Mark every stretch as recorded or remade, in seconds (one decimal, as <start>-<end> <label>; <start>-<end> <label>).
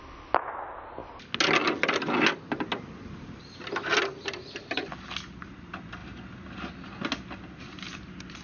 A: 0.0-8.4 recorded